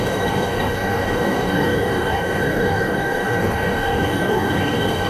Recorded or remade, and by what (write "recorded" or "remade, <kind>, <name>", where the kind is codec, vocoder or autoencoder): remade, codec, DAC